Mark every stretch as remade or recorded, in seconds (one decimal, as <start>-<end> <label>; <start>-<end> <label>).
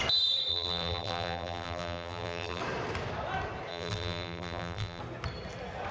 0.0-0.5 recorded; 0.5-2.6 remade; 2.6-3.7 recorded; 3.7-5.0 remade; 5.0-5.9 recorded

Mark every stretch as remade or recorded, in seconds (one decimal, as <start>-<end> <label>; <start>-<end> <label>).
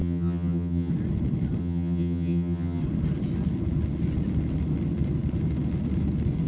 0.0-0.9 remade; 0.9-1.6 recorded; 1.6-2.8 remade; 2.8-6.5 recorded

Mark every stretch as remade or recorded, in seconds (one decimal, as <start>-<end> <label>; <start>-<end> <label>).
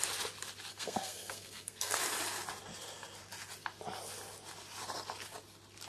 0.0-0.7 recorded; 0.7-2.0 remade; 2.0-5.9 recorded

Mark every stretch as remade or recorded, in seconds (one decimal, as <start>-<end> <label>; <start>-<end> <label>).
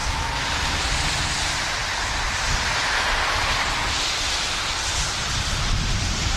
0.0-1.3 recorded; 1.3-6.4 remade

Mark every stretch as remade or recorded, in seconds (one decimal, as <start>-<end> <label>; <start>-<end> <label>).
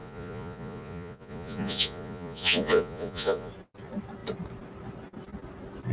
0.0-3.5 remade; 3.5-5.9 recorded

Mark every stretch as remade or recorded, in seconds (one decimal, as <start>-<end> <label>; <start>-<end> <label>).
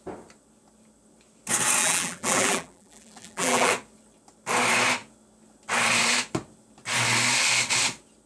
0.0-1.8 recorded; 1.8-3.7 remade; 3.7-8.3 recorded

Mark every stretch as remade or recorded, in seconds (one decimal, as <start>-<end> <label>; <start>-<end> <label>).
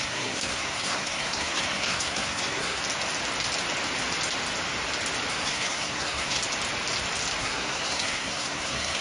0.0-2.8 remade; 2.8-5.3 recorded; 5.3-6.4 remade; 6.4-7.4 recorded; 7.4-9.0 remade